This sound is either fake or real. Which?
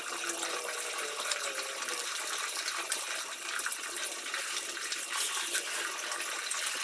fake